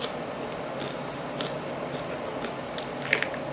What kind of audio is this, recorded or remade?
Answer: recorded